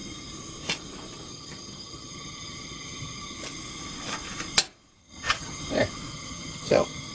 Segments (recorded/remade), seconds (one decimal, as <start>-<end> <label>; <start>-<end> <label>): 0.0-1.3 recorded; 1.3-3.4 remade; 3.4-5.0 recorded; 5.0-5.6 remade; 5.6-6.1 recorded; 6.1-7.1 remade